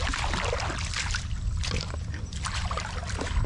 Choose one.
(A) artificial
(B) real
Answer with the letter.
B